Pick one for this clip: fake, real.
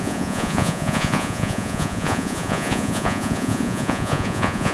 fake